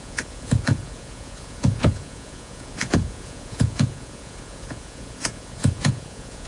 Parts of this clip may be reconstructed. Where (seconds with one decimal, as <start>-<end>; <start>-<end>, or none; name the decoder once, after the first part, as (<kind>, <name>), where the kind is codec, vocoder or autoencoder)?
0.0-6.5 (vocoder, Vocos)